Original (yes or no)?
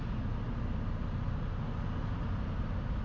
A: yes